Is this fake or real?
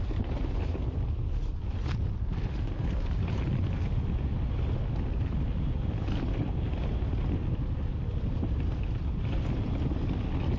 real